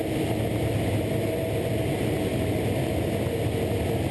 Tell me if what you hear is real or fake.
real